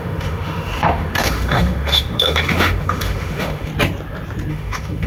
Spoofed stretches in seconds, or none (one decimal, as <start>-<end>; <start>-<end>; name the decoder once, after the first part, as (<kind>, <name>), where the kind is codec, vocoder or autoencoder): 0.0-3.7 (autoencoder, DAC-VAE); 4.5-5.1